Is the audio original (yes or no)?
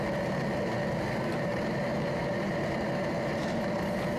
no